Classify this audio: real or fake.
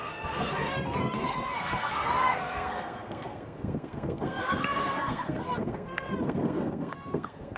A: fake